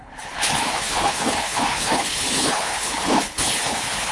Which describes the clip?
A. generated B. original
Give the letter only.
A